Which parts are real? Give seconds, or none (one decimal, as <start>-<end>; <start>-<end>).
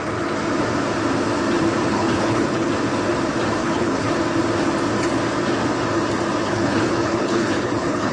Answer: 0.0-1.9; 2.7-3.6; 4.1-6.4